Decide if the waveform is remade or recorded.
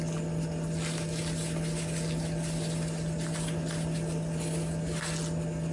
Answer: recorded